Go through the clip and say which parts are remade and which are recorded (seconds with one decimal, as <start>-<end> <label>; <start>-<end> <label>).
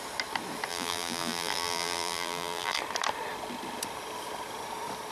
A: 0.0-0.7 recorded; 0.7-2.8 remade; 2.8-5.1 recorded